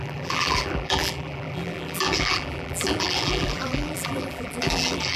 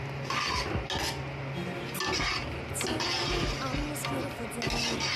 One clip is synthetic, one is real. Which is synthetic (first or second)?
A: first